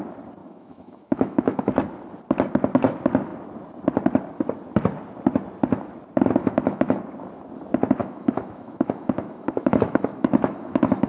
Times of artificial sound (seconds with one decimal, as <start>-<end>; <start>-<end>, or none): 0.4-1.7; 6.4-7.0; 8.0-11.1